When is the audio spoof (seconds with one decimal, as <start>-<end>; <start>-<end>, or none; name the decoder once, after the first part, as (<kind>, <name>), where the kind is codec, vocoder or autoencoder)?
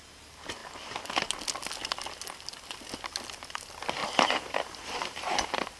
4.0-5.8 (vocoder, BigVGAN v2)